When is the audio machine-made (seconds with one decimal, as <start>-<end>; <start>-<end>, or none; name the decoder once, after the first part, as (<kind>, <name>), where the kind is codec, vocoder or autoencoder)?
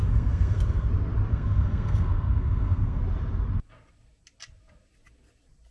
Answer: 0.0-0.9 (codec, SNAC); 1.3-3.0